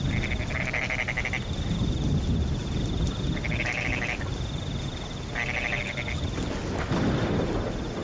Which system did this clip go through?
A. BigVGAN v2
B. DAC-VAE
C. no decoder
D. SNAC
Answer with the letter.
C